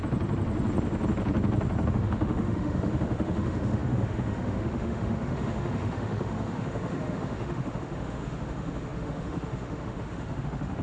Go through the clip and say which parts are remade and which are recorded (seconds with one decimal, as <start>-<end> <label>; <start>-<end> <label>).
0.0-1.9 recorded; 1.9-10.8 remade